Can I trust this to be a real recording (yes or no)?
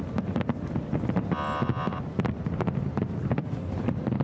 no